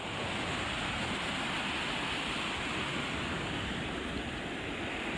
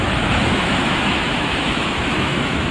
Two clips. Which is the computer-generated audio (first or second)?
second